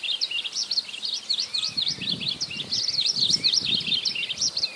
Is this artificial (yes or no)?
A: no